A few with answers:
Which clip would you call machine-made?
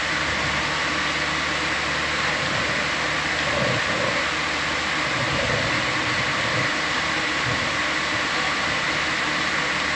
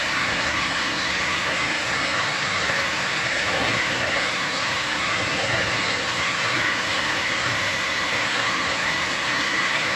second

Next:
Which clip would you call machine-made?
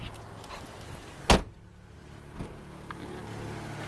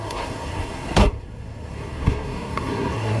second